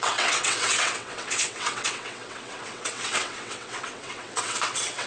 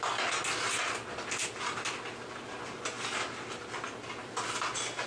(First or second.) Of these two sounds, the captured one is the second